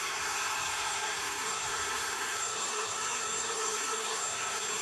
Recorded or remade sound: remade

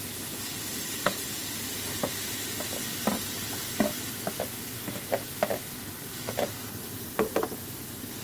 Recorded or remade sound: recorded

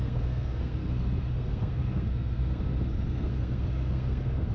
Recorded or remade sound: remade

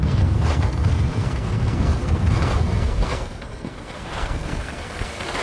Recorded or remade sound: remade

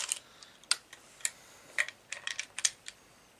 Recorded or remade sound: recorded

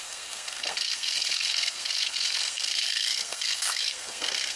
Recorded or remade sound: remade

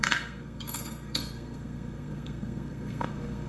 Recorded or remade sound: remade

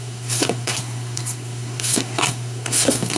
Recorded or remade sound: remade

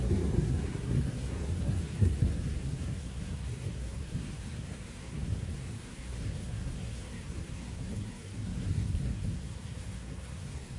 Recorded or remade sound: remade